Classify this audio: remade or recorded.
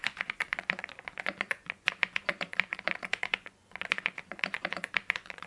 remade